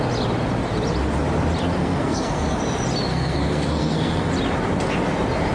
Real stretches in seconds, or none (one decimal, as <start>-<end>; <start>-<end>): 0.0-1.8; 2.6-3.1; 4.3-5.5